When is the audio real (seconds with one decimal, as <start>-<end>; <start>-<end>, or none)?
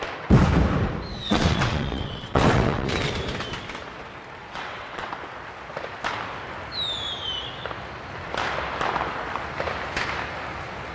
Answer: 0.0-1.2; 3.1-4.4; 5.1-10.9